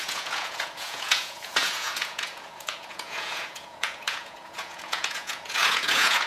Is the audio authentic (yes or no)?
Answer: no